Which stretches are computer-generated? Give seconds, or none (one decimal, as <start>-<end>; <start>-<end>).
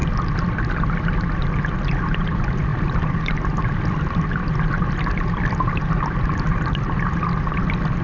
none